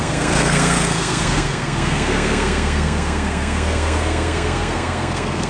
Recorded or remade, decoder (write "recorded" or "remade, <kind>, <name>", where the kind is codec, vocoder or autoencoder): remade, codec, SNAC